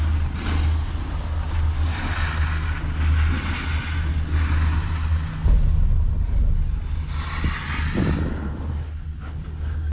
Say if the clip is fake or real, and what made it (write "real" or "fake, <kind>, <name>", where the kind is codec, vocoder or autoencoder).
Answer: real